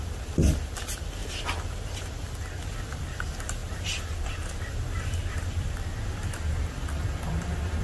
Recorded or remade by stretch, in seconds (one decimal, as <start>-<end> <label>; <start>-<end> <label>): 0.0-1.2 remade; 1.2-1.9 recorded; 1.9-7.8 remade